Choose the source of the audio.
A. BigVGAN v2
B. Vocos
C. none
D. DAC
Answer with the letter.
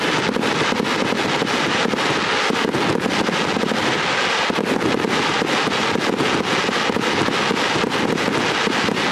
C